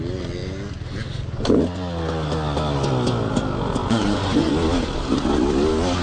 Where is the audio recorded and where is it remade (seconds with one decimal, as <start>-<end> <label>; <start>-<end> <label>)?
0.0-3.8 recorded; 3.8-4.5 remade; 4.5-6.0 recorded